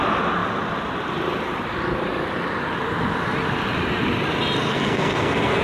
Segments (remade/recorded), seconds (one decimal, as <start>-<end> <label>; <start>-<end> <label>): 0.0-4.7 recorded; 4.7-5.6 remade